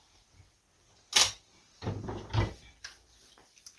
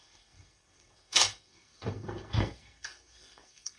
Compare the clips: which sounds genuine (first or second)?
first